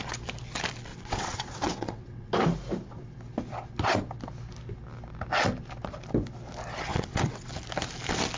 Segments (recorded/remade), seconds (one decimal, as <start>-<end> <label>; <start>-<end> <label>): 0.0-0.9 recorded; 0.9-2.3 remade; 2.3-6.9 recorded; 6.9-7.5 remade; 7.5-8.4 recorded